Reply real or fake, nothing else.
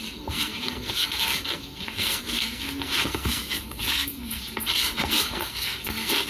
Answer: fake